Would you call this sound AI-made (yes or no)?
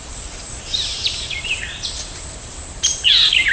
yes